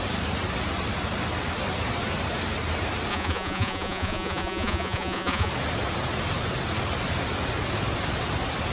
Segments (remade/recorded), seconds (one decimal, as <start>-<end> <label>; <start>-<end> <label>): 0.0-3.1 recorded; 3.1-5.5 remade; 5.5-8.7 recorded